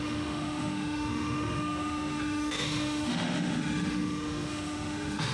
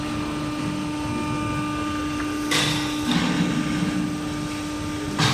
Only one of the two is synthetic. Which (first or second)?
first